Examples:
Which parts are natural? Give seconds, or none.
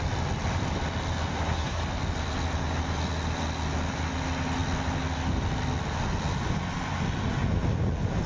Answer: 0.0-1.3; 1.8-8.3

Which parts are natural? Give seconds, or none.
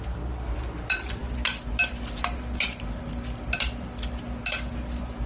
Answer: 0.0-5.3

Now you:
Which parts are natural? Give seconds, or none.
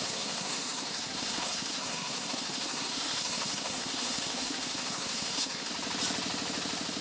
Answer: 5.7-7.0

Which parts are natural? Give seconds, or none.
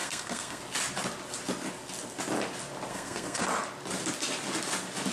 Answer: 0.6-2.9; 3.4-5.1